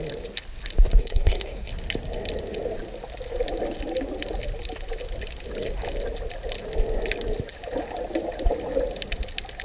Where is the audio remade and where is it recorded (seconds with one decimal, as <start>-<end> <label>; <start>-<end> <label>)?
0.0-1.0 recorded; 1.0-1.7 remade; 1.7-9.6 recorded